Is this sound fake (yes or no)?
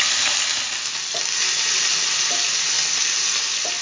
no